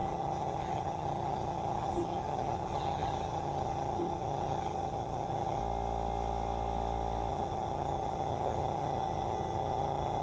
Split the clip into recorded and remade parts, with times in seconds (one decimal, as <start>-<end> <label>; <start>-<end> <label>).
0.0-5.6 remade; 5.6-7.3 recorded; 7.3-10.2 remade